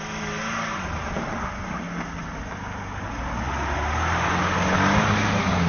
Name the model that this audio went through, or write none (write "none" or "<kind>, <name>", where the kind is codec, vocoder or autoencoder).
none